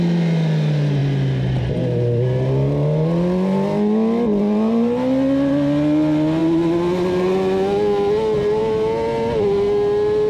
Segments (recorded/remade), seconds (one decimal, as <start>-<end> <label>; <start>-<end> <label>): 0.0-10.3 recorded